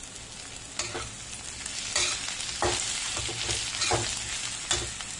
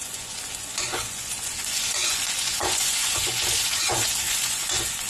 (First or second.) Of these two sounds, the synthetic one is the second